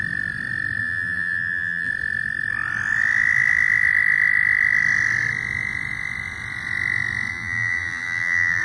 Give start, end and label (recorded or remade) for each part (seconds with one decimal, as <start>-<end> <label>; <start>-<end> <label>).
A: 0.0-0.8 recorded; 0.8-1.9 remade; 1.9-7.3 recorded; 7.3-8.6 remade